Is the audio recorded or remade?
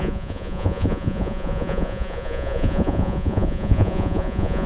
remade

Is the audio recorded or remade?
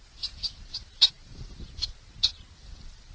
remade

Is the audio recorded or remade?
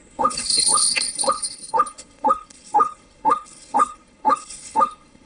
remade